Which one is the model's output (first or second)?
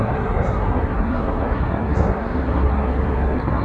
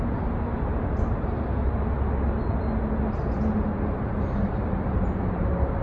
first